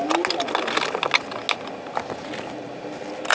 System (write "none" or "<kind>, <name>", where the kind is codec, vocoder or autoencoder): none